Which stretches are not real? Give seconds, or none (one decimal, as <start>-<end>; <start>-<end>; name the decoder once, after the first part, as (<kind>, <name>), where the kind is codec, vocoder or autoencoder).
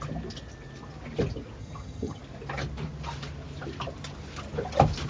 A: 1.6-2.2 (vocoder, HiFi-GAN)